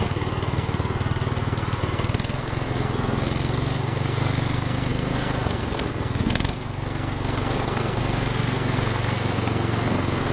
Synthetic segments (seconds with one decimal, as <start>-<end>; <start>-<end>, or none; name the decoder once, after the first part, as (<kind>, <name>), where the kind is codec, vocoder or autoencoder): 0.0-10.3 (codec, SNAC)